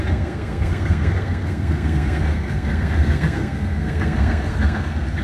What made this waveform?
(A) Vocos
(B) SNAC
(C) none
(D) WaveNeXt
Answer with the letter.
B